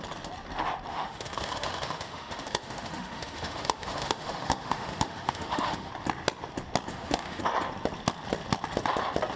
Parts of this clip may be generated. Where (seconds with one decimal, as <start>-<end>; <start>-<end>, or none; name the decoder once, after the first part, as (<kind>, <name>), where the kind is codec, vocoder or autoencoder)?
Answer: 0.9-5.9 (autoencoder, DAC-VAE); 6.9-7.4

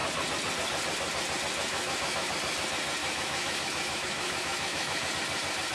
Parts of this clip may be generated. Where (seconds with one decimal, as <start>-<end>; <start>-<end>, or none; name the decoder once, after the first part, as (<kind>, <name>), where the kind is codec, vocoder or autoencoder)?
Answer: 1.7-2.3 (autoencoder, DAC-VAE); 3.0-5.1

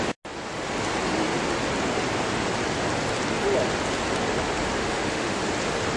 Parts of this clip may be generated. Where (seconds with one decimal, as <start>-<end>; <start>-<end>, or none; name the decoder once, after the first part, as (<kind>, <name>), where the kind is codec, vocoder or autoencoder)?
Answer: 4.8-5.4 (autoencoder, DAC-VAE)

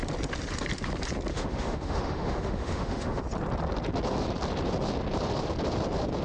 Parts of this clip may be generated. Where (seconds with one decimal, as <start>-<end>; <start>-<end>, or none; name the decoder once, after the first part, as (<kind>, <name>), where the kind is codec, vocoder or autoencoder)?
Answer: 1.3-3.2 (autoencoder, DAC-VAE)

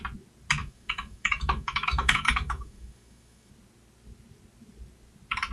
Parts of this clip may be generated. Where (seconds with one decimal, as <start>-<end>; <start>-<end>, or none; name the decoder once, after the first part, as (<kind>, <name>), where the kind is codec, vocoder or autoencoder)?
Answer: 0.6-3.5 (autoencoder, DAC-VAE)

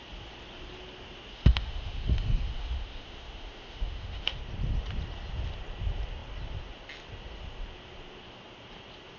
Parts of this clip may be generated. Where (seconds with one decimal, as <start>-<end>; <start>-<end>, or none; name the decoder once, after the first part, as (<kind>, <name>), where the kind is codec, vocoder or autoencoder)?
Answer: 1.3-4.4 (autoencoder, DAC-VAE)

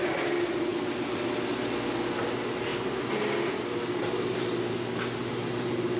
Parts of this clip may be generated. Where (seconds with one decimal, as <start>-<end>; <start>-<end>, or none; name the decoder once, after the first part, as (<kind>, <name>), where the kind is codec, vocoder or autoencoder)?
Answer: none